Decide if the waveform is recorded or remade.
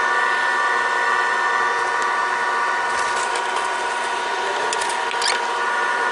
recorded